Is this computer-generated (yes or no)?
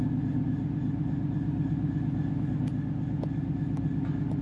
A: no